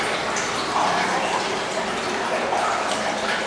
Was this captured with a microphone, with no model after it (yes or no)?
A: yes